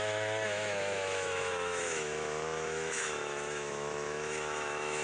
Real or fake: fake